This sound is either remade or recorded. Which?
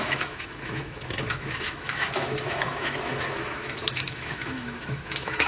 remade